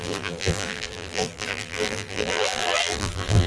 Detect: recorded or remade remade